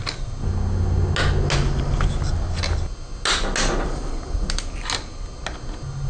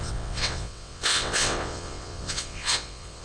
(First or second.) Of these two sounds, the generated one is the second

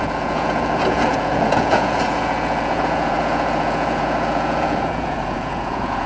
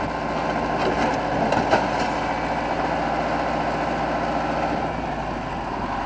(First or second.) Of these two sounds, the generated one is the first